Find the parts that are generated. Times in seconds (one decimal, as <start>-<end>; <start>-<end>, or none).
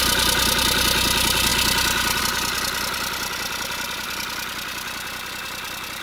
none